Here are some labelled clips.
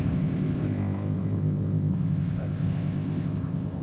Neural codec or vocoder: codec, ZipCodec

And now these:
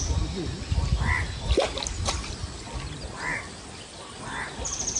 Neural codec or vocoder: none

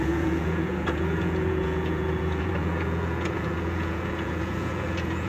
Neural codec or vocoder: vocoder, Vocos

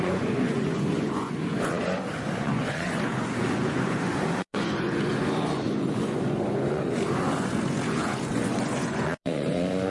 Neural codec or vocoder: vocoder, Vocos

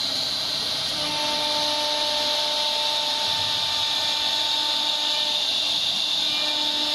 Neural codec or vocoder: none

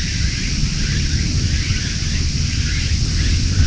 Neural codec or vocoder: none